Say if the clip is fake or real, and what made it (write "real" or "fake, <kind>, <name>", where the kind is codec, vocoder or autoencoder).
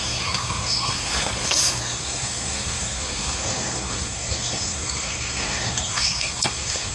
fake, codec, SNAC